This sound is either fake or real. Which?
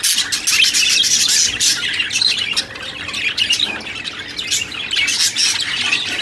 real